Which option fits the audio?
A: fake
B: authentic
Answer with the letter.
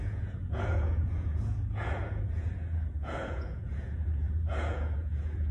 A